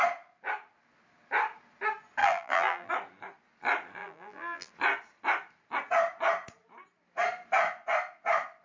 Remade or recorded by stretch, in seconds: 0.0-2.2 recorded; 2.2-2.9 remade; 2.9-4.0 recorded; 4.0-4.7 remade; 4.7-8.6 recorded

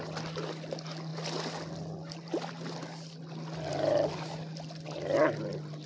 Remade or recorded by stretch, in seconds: 0.0-5.9 recorded

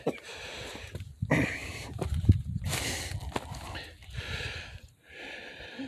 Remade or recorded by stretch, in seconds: 0.0-1.6 recorded; 1.6-2.6 remade; 2.6-5.9 recorded

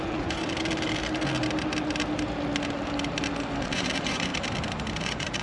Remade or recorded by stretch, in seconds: 0.0-0.4 remade; 0.4-3.6 recorded; 3.6-4.3 remade; 4.3-5.0 recorded; 5.0-5.4 remade

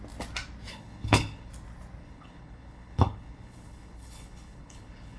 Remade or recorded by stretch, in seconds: 0.0-0.7 recorded; 0.7-1.5 remade; 1.5-2.0 recorded; 2.0-5.2 remade

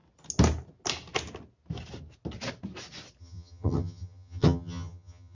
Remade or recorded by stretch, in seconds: 0.0-3.2 recorded; 3.2-5.3 remade

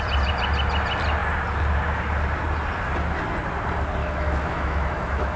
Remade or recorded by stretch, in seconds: 0.0-4.0 recorded; 4.0-5.4 remade